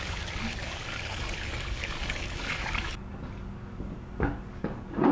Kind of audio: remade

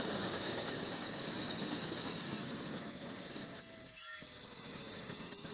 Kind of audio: remade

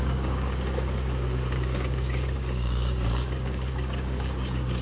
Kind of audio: remade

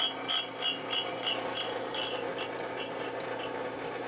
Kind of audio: recorded